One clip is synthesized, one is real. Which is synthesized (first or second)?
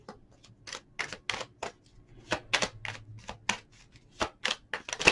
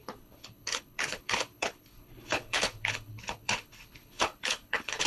second